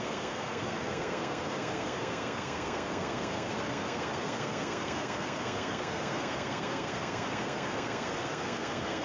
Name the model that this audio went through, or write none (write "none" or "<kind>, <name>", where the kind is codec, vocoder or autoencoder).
codec, SNAC